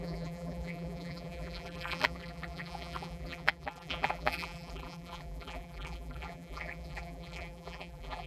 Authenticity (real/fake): fake